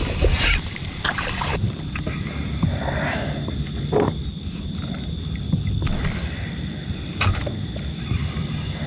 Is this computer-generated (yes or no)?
no